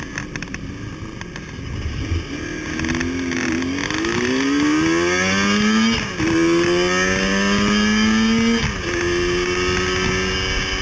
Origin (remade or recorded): recorded